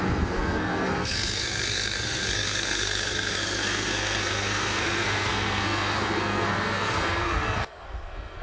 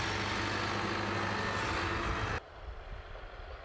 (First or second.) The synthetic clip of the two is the first